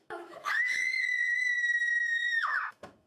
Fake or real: fake